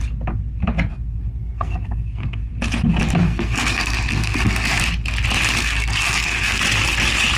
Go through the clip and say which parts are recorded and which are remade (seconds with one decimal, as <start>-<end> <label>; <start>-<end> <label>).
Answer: 0.0-0.9 recorded; 0.9-2.5 remade; 2.5-3.2 recorded; 3.2-4.8 remade; 4.8-5.6 recorded; 5.6-6.6 remade; 6.6-7.4 recorded